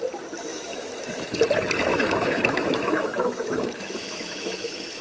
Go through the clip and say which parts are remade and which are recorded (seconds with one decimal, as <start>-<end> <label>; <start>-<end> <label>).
0.0-0.5 recorded; 0.5-1.4 remade; 1.4-1.9 recorded; 1.9-5.0 remade